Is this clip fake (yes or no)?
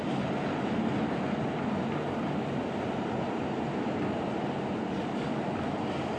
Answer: no